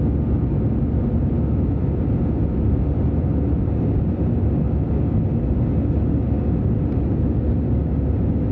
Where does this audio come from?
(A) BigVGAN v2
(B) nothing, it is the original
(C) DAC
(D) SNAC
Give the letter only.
B